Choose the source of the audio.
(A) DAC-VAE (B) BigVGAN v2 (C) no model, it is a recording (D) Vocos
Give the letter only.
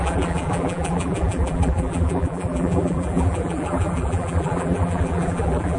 B